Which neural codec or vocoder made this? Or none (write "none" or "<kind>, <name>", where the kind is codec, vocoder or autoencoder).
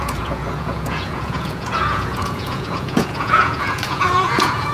vocoder, Vocos